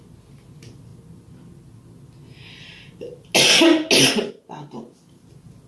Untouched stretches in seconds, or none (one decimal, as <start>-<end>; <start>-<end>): 0.0-5.7